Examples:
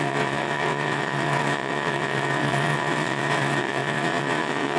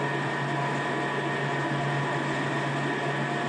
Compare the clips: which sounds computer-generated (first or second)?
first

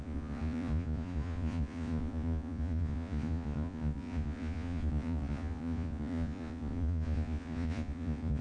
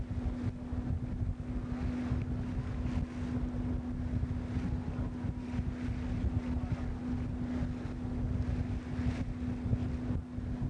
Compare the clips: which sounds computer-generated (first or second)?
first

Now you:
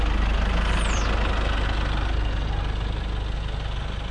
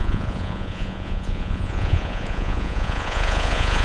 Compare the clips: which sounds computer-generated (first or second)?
second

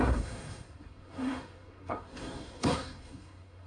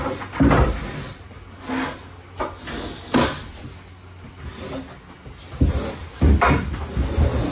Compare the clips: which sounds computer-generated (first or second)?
first